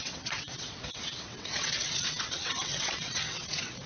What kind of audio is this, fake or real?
fake